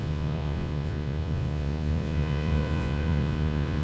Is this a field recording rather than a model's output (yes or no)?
no